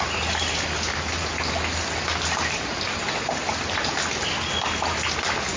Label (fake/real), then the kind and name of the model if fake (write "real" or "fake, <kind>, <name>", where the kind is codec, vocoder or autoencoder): real